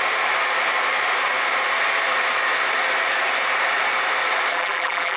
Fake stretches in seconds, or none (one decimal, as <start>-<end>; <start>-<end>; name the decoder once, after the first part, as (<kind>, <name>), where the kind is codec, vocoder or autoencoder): 4.5-5.2 (vocoder, BigVGAN v2)